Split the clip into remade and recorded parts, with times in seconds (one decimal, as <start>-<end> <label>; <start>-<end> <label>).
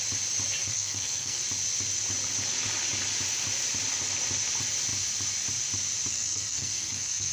0.0-0.6 recorded; 0.6-1.4 remade; 1.4-6.1 recorded; 6.1-7.3 remade